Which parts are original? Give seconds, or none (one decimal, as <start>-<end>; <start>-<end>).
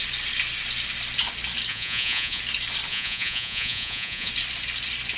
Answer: 0.0-1.7; 2.4-2.9; 4.3-5.2